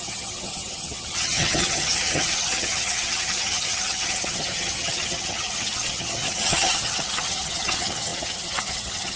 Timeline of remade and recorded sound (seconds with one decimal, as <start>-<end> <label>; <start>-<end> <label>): 0.0-9.2 remade